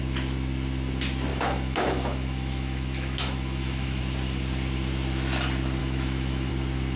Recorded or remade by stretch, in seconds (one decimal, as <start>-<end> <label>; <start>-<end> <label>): 0.0-1.3 recorded; 1.3-4.0 remade; 4.0-5.8 recorded; 5.8-6.5 remade; 6.5-7.0 recorded